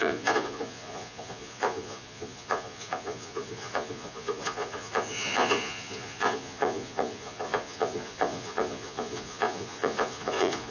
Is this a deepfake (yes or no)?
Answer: yes